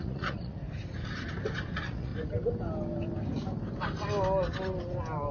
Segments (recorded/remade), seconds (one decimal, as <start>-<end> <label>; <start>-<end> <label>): 0.0-0.6 remade; 0.6-1.7 recorded; 1.7-2.1 remade; 2.1-5.3 recorded